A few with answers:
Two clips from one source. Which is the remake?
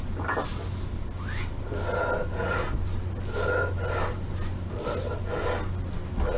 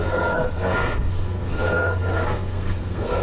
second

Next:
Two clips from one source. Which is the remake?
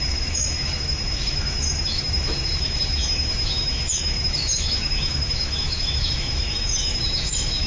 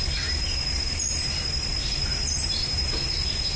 first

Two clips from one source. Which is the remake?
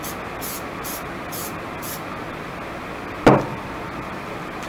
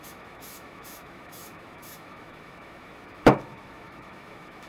second